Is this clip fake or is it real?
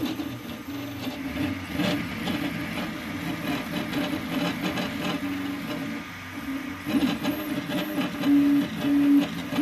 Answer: real